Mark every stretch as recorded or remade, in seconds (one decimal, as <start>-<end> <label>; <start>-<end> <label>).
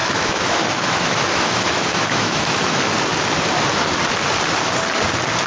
0.0-2.8 remade; 2.8-5.5 recorded